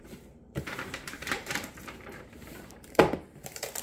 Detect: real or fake fake